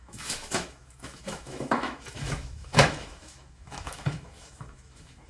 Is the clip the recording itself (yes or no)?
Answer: no